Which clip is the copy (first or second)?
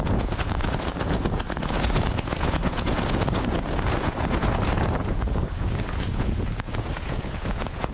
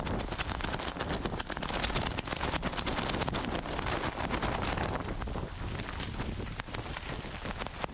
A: first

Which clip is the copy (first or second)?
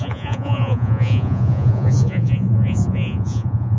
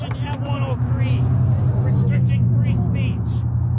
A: first